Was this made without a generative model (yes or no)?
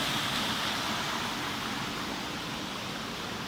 yes